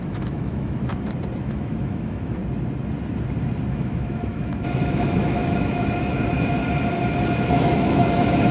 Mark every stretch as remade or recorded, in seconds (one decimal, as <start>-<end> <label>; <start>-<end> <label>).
0.0-0.9 remade; 0.9-1.4 recorded; 1.4-2.4 remade; 2.4-3.7 recorded; 3.7-6.6 remade; 6.6-7.4 recorded; 7.4-8.5 remade